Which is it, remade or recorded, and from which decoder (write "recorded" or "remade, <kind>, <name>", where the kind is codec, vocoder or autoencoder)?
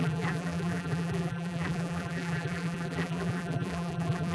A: remade, vocoder, BigVGAN v2